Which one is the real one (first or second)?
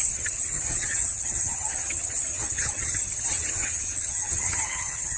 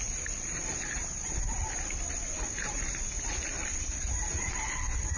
second